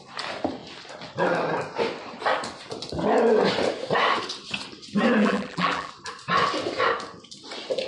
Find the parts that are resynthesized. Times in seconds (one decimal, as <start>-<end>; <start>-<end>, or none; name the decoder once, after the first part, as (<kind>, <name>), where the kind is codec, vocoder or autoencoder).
5.2-5.9 (vocoder, BigVGAN v2)